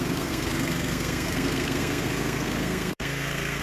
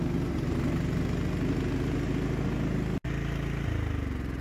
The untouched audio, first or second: second